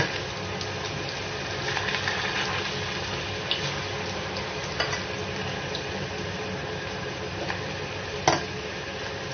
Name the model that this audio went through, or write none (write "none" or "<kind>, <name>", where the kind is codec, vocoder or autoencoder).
none